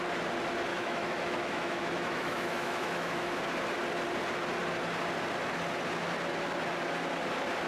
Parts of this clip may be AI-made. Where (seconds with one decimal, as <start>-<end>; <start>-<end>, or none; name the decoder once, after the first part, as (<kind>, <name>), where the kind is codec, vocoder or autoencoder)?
0.7-3.4 (autoencoder, DAC-VAE)